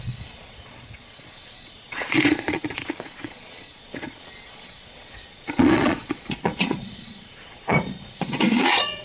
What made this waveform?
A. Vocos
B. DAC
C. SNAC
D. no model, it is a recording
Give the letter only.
A